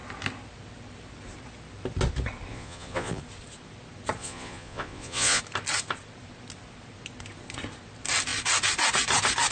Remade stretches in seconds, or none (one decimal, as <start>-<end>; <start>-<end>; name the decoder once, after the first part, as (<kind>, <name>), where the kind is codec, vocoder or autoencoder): 2.5-3.2 (vocoder, Vocos); 4.2-5.4